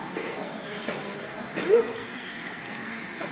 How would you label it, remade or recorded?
remade